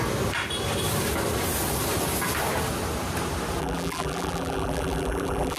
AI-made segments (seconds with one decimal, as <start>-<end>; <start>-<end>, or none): 3.6-5.6